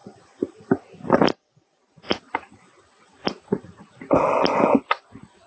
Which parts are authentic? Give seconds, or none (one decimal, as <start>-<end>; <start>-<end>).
1.0-2.2; 3.8-5.5